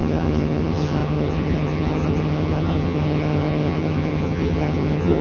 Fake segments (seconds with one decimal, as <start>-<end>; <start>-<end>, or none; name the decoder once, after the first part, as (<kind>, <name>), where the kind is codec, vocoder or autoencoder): 0.0-5.2 (vocoder, HiFi-GAN)